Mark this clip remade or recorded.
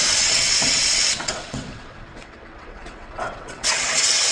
remade